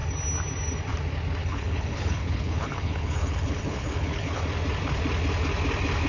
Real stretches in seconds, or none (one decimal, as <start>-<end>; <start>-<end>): 0.0-1.4; 4.4-6.1